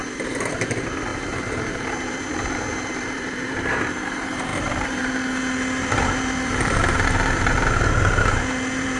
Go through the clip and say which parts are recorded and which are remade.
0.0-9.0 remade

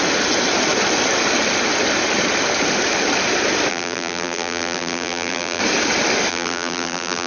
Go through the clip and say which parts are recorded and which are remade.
0.0-3.7 recorded; 3.7-5.6 remade; 5.6-6.3 recorded; 6.3-7.3 remade